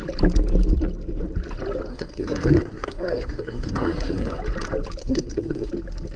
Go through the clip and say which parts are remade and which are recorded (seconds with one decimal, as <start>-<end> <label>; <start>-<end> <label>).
0.0-1.9 recorded; 1.9-4.4 remade; 4.4-5.0 recorded; 5.0-5.7 remade; 5.7-6.2 recorded

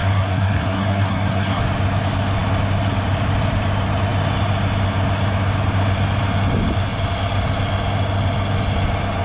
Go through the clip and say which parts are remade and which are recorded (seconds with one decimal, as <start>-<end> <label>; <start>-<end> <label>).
0.0-1.6 remade; 1.6-9.2 recorded